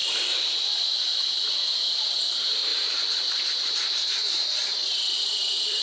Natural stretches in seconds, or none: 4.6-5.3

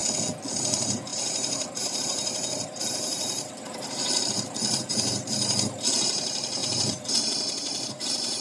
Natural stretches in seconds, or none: 0.0-0.5

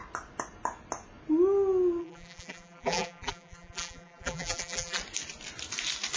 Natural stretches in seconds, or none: 0.0-2.0; 5.0-6.2